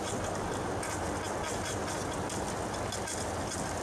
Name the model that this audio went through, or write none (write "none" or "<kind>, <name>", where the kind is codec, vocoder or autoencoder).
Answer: none